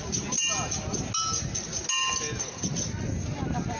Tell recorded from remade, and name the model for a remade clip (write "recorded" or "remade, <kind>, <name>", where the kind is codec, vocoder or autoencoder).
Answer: recorded